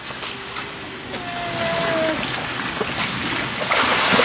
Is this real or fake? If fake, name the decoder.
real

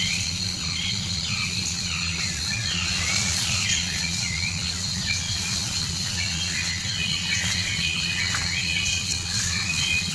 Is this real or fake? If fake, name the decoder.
fake, vocoder, Vocos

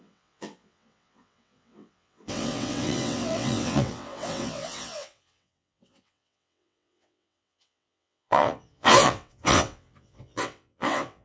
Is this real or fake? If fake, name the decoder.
fake, vocoder, WaveNeXt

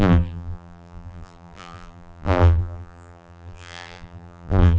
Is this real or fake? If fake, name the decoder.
fake, vocoder, BigVGAN v2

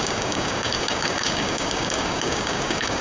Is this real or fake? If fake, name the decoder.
fake, codec, DAC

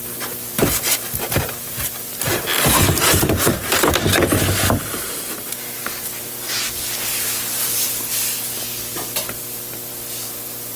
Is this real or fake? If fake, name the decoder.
real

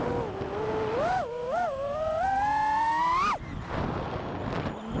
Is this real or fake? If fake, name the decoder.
real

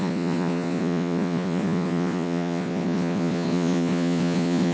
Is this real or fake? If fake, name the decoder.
fake, vocoder, Vocos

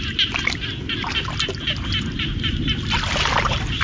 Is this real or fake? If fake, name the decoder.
real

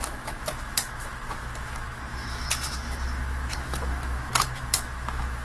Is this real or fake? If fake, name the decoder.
fake, autoencoder, DAC-VAE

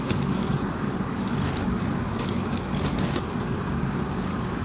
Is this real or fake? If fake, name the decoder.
fake, codec, DAC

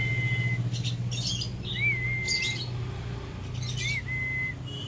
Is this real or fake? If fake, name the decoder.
real